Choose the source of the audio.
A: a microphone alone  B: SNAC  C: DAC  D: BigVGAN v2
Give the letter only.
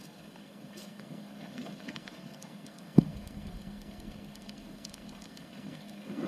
B